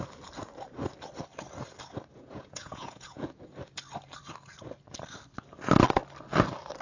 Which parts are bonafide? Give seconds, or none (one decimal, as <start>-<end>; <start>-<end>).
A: 0.0-2.1; 3.5-6.8